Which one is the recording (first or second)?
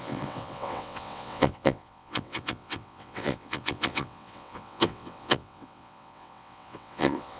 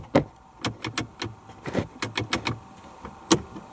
second